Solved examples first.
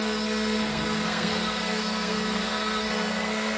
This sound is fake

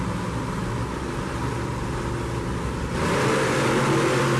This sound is real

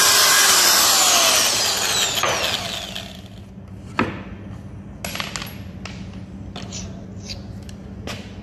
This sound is real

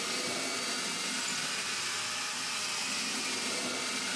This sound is real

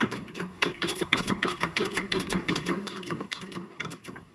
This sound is fake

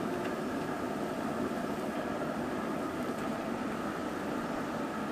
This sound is fake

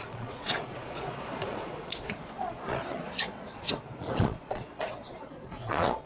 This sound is fake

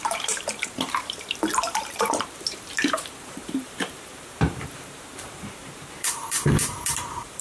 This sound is fake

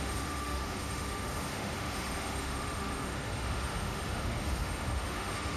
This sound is fake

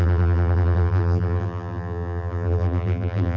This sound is fake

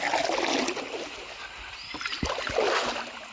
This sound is real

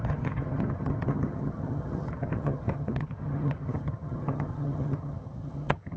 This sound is fake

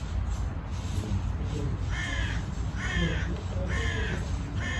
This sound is real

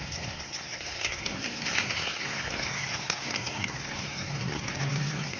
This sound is fake